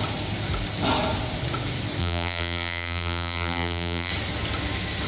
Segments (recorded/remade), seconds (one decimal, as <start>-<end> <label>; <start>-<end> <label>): 0.0-2.0 recorded; 2.0-4.1 remade; 4.1-5.1 recorded